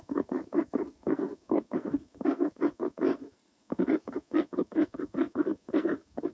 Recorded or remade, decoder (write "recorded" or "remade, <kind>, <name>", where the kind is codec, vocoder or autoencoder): remade, codec, SNAC